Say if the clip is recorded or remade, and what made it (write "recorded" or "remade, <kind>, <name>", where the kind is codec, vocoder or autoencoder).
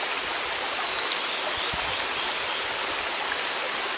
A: recorded